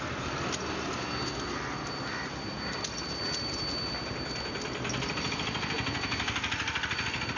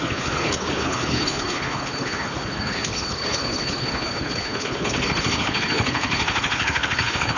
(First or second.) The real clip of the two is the first